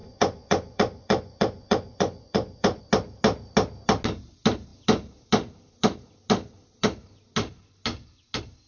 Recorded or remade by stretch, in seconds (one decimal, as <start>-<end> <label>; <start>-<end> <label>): 0.0-2.8 remade; 2.8-8.7 recorded